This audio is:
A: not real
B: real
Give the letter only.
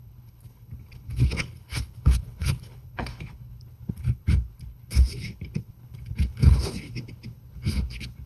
A